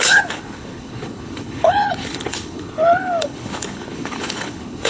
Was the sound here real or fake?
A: fake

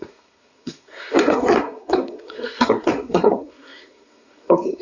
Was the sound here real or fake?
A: fake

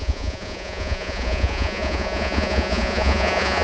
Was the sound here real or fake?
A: fake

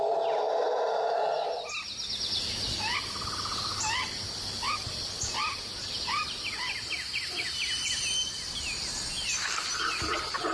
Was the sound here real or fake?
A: real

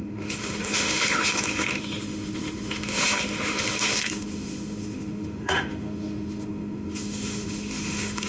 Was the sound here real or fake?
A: fake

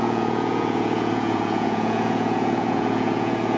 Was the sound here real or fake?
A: fake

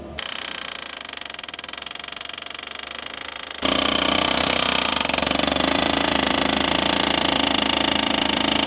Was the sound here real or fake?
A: fake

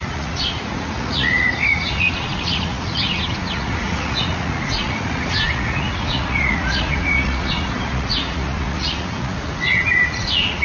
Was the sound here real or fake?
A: fake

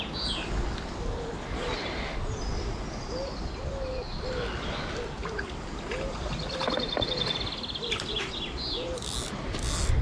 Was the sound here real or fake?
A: real